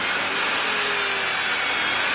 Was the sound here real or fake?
real